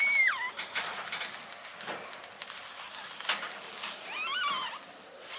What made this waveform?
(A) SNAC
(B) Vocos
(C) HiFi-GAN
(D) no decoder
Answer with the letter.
D